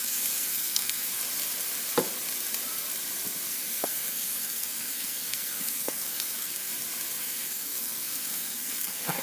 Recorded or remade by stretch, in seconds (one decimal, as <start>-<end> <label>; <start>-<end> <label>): 0.0-1.2 remade; 1.2-3.5 recorded; 3.5-6.7 remade; 6.7-7.2 recorded; 7.2-9.2 remade